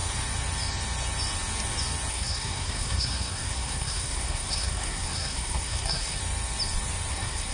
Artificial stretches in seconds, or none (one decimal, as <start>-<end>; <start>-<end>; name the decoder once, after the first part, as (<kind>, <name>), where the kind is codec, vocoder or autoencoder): 2.1-6.2 (codec, SNAC); 7.1-7.5